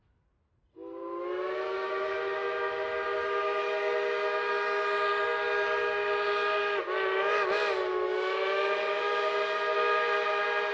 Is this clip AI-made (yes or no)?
no